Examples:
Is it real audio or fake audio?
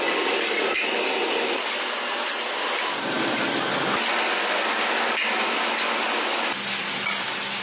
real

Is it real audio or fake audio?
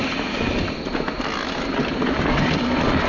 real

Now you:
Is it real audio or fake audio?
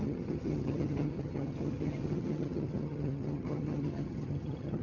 fake